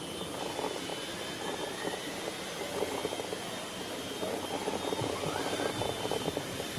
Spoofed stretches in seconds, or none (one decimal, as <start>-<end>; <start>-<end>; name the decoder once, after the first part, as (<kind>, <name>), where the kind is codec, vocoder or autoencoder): 5.4-6.8 (vocoder, BigVGAN v2)